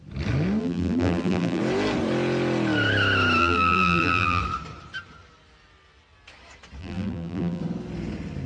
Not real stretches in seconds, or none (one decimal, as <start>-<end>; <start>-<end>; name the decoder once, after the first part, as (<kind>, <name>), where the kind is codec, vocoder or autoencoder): 0.6-1.6 (vocoder, BigVGAN v2); 3.4-4.4; 6.8-7.6